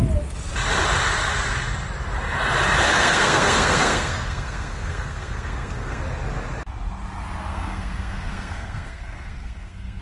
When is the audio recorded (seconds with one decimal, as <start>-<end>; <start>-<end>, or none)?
0.0-2.9; 6.0-7.5